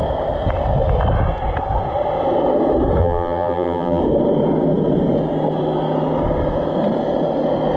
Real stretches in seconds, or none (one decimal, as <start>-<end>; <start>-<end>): 0.0-3.0; 4.0-7.8